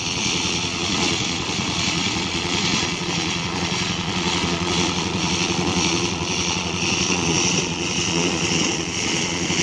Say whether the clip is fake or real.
fake